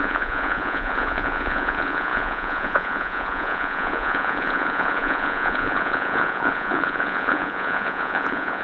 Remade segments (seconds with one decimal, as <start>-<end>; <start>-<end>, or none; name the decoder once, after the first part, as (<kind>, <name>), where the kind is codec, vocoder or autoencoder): 0.0-8.6 (vocoder, Vocos)